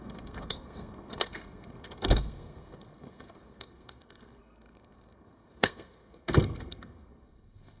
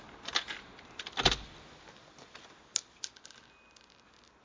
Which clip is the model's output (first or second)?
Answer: first